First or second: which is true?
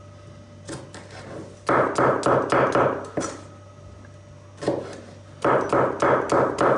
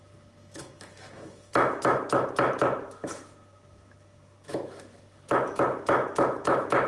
first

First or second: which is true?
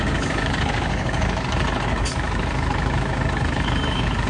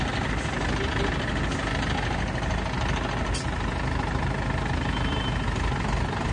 second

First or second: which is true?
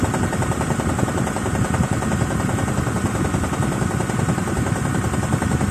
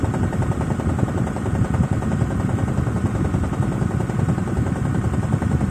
first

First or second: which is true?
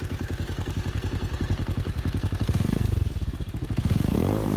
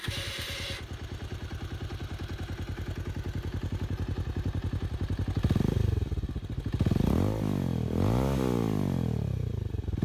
second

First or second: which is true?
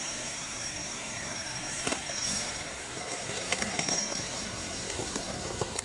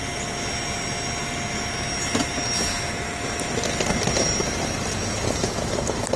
second